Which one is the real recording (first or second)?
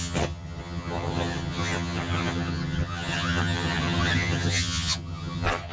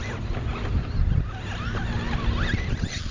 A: second